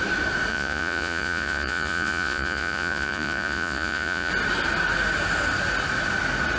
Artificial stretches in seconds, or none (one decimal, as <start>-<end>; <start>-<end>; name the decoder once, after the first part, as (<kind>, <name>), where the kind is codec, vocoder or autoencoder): 0.5-4.3 (vocoder, Vocos)